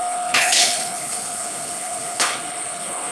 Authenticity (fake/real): fake